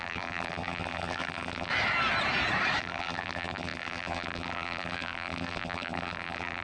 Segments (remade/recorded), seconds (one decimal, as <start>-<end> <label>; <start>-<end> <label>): 0.0-1.7 remade; 1.7-2.8 recorded; 2.8-6.6 remade